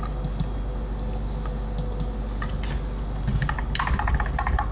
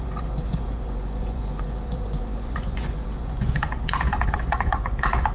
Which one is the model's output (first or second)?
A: second